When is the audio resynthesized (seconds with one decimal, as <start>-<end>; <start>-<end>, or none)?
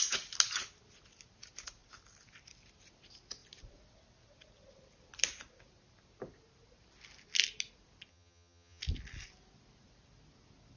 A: 8.1-8.8